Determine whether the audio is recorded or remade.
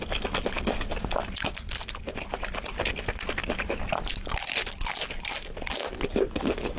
remade